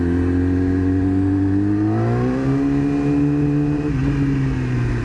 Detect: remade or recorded recorded